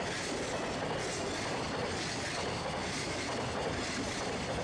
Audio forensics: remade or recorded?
recorded